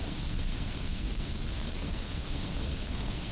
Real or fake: fake